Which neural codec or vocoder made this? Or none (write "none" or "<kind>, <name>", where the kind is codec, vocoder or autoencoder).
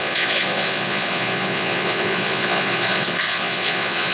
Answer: vocoder, Vocos